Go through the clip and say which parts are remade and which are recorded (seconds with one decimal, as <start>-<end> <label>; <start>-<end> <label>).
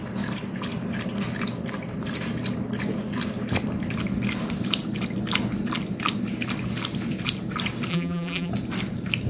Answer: 0.0-7.9 recorded; 7.9-8.5 remade; 8.5-9.3 recorded